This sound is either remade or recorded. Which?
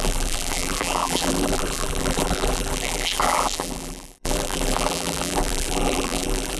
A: remade